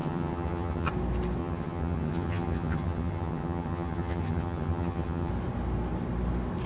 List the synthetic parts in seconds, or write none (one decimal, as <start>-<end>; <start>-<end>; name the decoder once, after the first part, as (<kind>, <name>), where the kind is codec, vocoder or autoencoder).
0.0-0.9 (vocoder, HiFi-GAN); 1.4-5.3